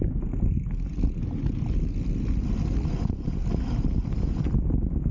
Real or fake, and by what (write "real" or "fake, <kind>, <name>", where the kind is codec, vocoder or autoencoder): real